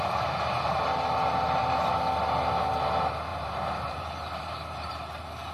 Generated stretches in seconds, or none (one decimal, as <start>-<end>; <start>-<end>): 3.3-4.9